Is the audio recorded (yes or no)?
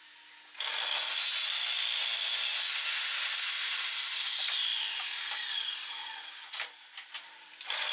yes